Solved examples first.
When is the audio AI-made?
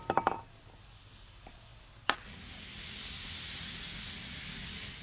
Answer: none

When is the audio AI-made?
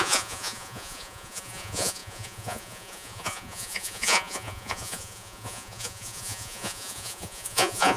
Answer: 0.0-8.0 (vocoder, Vocos)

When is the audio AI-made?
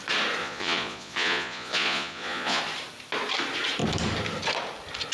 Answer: 0.4-2.6 (vocoder, Vocos)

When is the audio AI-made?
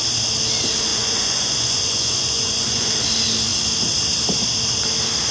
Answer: 0.9-2.9 (vocoder, Vocos)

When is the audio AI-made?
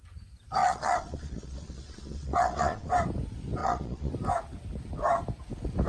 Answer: 0.6-2.9 (vocoder, Vocos); 3.6-4.1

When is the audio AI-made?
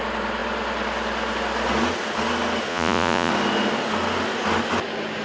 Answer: 2.7-3.3 (vocoder, Vocos)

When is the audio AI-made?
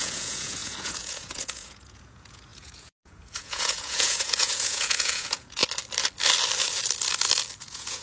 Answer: 0.0-5.6 (vocoder, Vocos); 7.6-8.0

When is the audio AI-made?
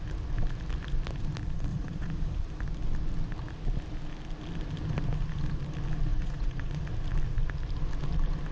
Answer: 1.7-2.4 (vocoder, Vocos); 6.1-6.8